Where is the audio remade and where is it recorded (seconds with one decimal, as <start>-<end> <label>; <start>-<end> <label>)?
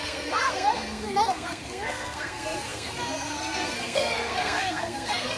0.0-5.4 remade